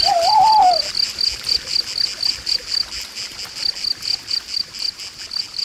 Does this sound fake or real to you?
real